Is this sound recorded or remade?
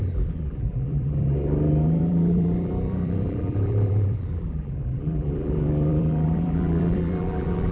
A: remade